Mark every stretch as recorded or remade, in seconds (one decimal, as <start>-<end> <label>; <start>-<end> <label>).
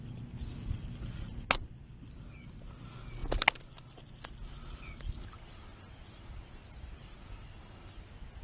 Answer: 0.0-8.4 recorded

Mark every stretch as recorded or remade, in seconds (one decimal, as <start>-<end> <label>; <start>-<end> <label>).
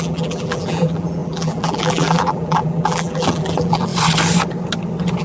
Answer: 0.0-3.9 remade; 3.9-5.2 recorded